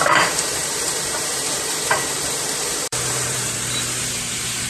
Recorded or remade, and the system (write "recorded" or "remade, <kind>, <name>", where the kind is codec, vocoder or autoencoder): remade, vocoder, BigVGAN v2